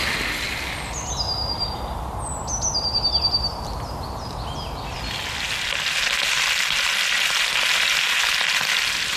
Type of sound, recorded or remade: recorded